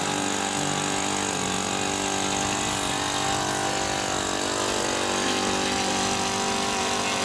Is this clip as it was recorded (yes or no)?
yes